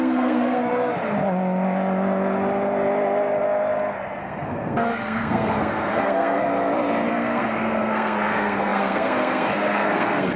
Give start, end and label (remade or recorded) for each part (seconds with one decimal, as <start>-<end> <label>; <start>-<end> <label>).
0.0-0.9 remade; 0.9-4.2 recorded; 4.2-6.5 remade; 6.5-7.1 recorded; 7.1-10.4 remade